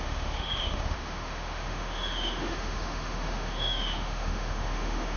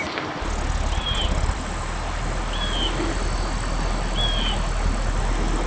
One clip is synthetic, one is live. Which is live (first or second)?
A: second